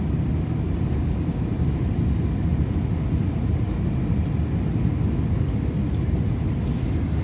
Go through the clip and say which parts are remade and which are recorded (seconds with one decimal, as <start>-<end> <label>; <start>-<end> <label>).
0.0-7.2 recorded